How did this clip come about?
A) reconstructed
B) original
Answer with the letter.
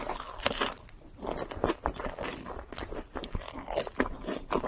B